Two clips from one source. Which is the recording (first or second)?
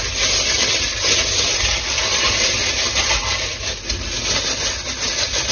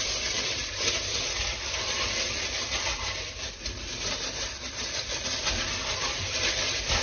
first